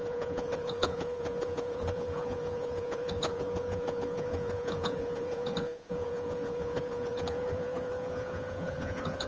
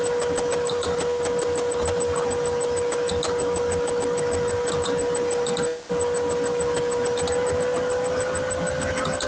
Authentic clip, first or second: second